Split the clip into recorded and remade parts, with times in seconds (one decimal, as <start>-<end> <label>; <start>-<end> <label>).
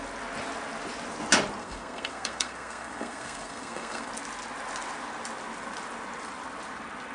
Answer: 0.0-1.6 recorded; 1.6-4.1 remade; 4.1-7.1 recorded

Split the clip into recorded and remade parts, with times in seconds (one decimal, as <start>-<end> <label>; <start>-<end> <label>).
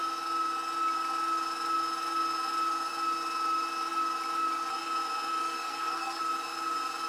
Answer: 0.0-5.4 recorded; 5.4-6.2 remade; 6.2-7.1 recorded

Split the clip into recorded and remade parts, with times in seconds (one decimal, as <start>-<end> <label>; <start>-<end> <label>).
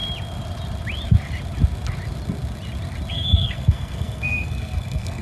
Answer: 0.0-3.1 recorded; 3.1-5.2 remade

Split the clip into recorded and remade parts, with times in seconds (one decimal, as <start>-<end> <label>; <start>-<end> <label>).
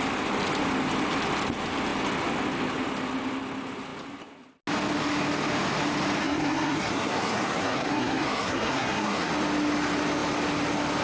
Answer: 0.0-6.2 recorded; 6.2-9.3 remade; 9.3-11.0 recorded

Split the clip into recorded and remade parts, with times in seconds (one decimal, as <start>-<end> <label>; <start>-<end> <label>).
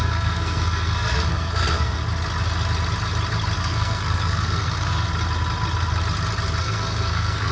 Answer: 0.0-2.0 remade; 2.0-3.6 recorded; 3.6-5.1 remade; 5.1-6.6 recorded; 6.6-7.5 remade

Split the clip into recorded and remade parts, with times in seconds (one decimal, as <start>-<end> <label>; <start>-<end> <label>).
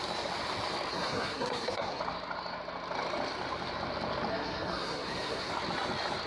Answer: 0.0-0.9 recorded; 0.9-2.0 remade; 2.0-4.3 recorded; 4.3-5.5 remade; 5.5-6.3 recorded